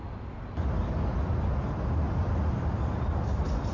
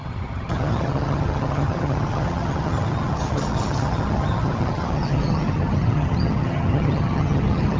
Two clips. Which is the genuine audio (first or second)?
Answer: first